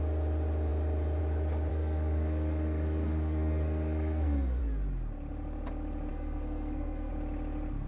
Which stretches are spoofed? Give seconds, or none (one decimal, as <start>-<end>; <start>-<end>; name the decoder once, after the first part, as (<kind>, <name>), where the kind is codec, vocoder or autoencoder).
1.7-4.6 (codec, SNAC); 6.1-7.1